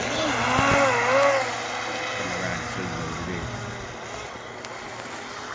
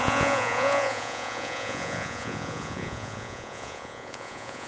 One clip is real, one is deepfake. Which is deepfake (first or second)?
second